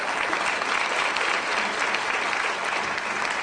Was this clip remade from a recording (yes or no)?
no